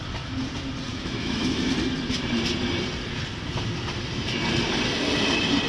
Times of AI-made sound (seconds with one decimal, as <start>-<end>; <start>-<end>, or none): 0.9-1.7